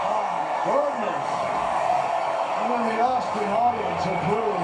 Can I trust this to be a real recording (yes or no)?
no